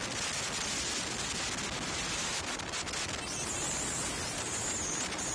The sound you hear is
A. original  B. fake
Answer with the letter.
A